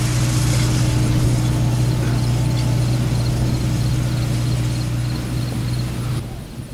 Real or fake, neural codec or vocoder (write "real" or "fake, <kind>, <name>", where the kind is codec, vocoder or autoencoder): real